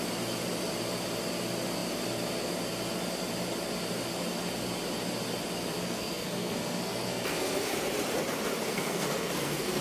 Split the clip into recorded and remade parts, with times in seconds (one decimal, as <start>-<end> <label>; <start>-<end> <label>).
0.0-5.8 recorded; 5.8-7.7 remade; 7.7-8.7 recorded; 8.7-9.8 remade